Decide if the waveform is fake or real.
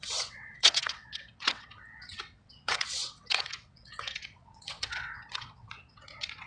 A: fake